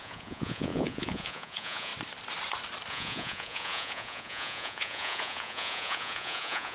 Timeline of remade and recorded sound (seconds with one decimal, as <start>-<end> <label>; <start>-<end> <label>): 0.0-1.9 remade; 1.9-2.9 recorded; 2.9-6.7 remade